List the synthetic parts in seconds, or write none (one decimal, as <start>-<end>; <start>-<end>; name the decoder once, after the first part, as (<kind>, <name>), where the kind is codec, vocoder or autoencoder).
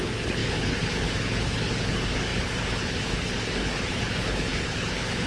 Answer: 0.0-5.3 (codec, HILCodec)